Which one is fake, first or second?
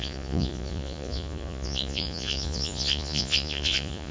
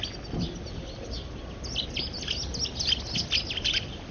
first